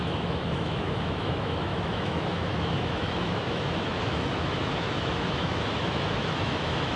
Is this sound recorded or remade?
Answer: remade